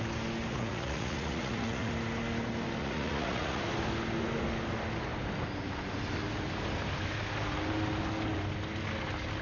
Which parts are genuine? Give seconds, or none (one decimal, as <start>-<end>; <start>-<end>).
0.0-0.5; 1.9-2.8; 3.6-9.4